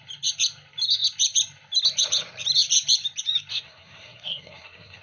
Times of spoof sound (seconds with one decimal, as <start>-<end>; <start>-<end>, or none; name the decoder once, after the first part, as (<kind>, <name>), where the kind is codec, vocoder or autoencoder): 3.5-5.0 (codec, SNAC)